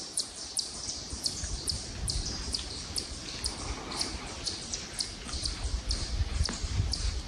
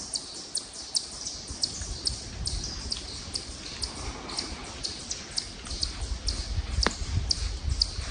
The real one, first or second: second